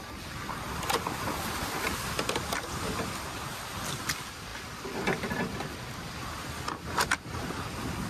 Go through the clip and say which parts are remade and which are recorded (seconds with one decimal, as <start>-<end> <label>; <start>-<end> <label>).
0.0-8.1 recorded